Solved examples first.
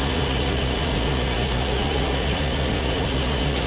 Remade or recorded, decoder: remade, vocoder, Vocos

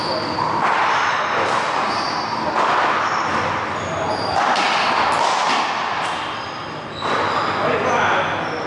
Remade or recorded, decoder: recorded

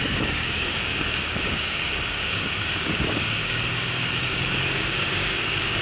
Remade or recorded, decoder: remade, codec, DAC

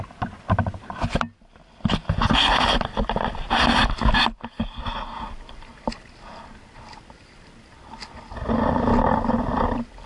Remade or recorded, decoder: recorded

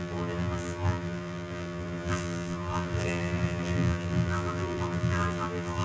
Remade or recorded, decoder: remade, vocoder, BigVGAN v2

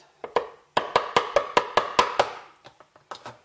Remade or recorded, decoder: recorded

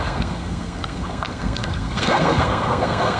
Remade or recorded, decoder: remade, codec, SNAC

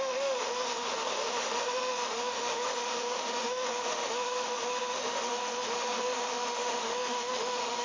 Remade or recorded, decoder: remade, autoencoder, DAC-VAE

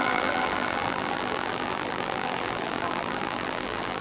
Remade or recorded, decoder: remade, vocoder, BigVGAN v2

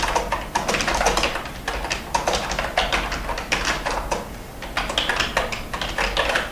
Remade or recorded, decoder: recorded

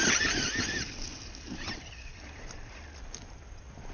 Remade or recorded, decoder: recorded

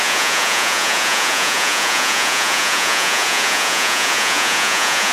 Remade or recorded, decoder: remade, vocoder, Vocos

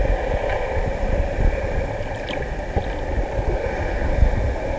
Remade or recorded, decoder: recorded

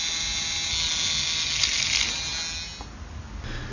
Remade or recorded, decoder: recorded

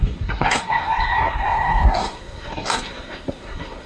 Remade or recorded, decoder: remade, codec, SNAC